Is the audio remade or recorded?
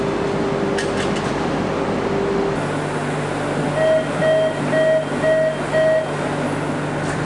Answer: recorded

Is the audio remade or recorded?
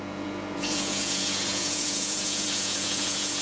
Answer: remade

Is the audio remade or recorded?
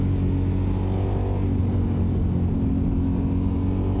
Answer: recorded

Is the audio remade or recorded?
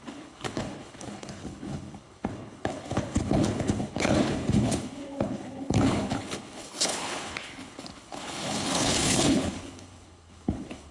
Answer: remade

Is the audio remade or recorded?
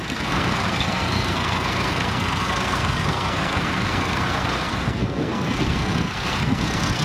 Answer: remade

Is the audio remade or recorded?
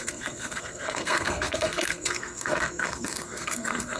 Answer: remade